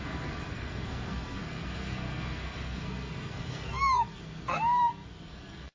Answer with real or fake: fake